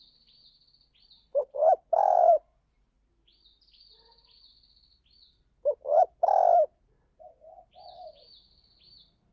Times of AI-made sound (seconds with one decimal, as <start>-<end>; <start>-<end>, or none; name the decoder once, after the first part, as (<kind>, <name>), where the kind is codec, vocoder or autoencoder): 0.0-3.4 (vocoder, BigVGAN v2); 6.8-9.3